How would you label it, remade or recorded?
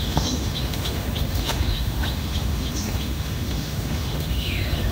remade